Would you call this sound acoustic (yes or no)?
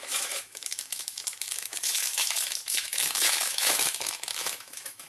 no